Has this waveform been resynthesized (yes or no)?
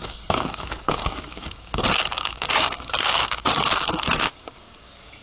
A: yes